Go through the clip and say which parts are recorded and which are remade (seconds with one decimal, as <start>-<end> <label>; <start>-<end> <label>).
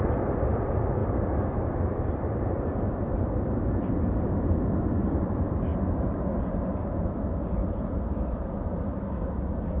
0.0-9.8 recorded